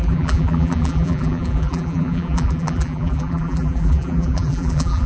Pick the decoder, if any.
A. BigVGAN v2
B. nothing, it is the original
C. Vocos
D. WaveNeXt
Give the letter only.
A